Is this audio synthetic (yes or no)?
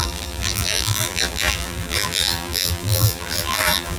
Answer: yes